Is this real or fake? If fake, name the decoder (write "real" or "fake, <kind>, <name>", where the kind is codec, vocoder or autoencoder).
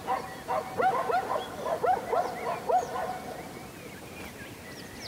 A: real